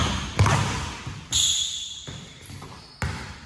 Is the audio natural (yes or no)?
yes